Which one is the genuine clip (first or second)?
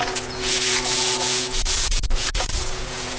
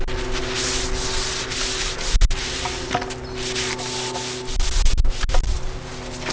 second